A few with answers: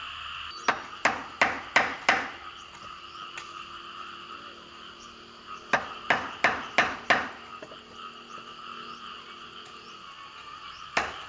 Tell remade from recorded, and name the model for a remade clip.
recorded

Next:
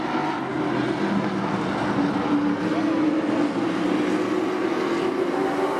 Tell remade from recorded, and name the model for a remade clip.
recorded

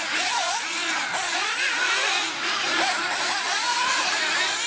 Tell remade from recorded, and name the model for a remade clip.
remade, vocoder, Vocos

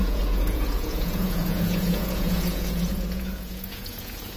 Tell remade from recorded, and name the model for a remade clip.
remade, vocoder, Vocos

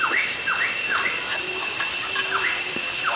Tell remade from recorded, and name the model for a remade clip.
recorded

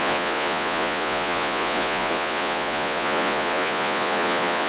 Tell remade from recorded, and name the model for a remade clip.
remade, vocoder, Vocos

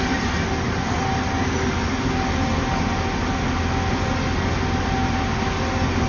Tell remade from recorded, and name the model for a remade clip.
recorded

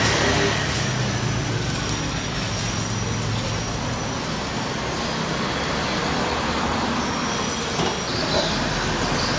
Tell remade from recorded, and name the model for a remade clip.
recorded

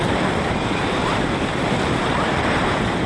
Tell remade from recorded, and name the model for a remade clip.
recorded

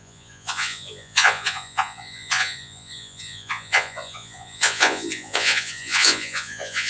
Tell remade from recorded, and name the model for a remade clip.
remade, vocoder, Vocos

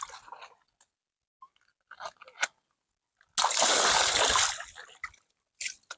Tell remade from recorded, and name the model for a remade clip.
recorded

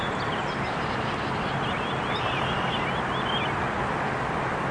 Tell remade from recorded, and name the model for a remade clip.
recorded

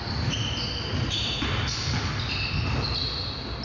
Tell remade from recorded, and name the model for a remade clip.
recorded